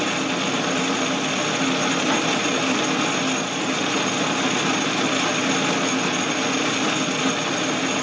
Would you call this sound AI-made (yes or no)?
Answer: no